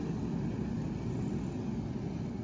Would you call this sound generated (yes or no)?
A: no